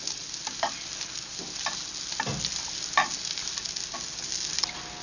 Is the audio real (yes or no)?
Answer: yes